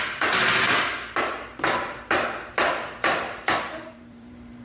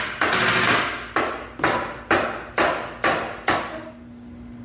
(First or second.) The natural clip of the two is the second